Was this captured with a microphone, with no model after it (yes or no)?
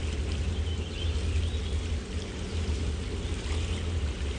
yes